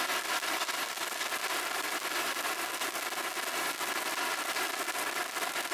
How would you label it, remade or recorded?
recorded